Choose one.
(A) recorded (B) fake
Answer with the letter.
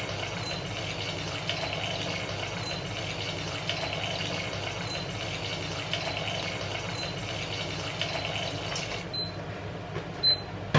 A